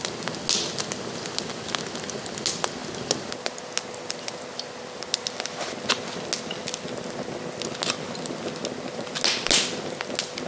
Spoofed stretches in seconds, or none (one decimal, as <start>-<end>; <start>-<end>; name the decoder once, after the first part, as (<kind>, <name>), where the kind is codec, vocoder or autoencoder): none